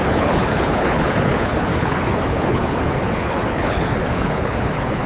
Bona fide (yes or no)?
no